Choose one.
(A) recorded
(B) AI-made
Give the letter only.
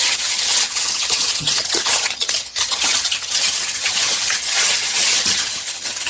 B